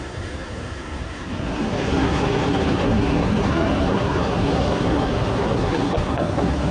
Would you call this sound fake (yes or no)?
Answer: yes